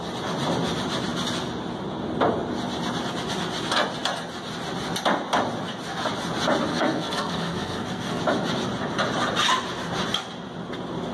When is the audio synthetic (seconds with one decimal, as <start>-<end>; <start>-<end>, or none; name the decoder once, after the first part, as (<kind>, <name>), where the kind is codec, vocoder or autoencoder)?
6.7-8.2 (codec, SNAC)